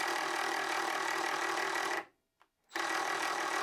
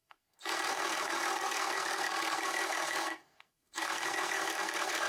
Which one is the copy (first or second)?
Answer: second